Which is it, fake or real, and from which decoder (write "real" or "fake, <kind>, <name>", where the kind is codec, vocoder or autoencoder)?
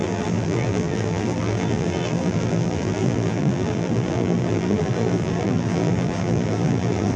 fake, vocoder, BigVGAN v2